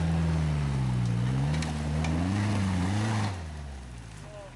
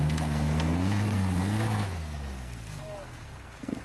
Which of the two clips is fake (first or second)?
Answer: second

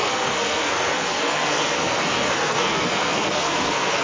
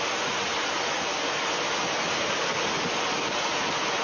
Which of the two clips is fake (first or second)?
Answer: first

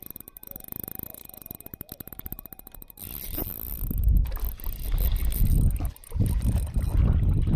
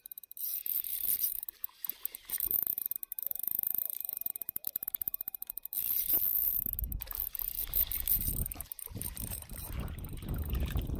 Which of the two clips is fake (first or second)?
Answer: second